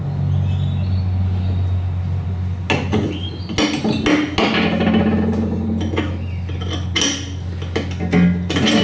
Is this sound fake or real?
real